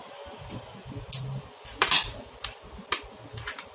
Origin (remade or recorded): recorded